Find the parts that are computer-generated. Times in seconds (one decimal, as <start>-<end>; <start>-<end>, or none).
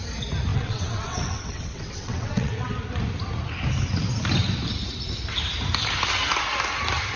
0.5-2.7